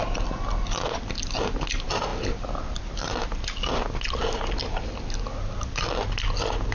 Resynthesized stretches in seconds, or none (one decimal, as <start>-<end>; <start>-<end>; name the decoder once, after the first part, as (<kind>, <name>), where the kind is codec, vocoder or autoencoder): none